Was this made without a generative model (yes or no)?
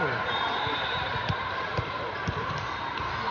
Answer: no